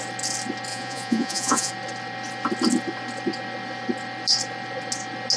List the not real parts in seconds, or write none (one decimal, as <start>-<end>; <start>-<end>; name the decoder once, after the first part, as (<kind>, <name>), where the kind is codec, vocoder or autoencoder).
0.7-1.7 (vocoder, Vocos)